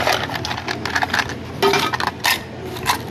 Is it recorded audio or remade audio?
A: recorded